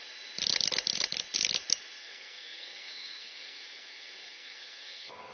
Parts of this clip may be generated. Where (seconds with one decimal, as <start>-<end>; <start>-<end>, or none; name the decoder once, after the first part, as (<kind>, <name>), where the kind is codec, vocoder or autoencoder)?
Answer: 2.0-5.3 (codec, SNAC)